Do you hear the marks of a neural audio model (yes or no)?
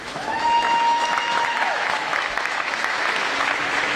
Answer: yes